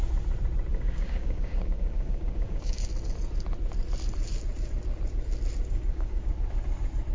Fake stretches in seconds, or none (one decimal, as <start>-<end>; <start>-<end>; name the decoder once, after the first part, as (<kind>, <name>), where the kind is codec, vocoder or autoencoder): 0.7-2.9 (codec, DAC); 5.7-6.3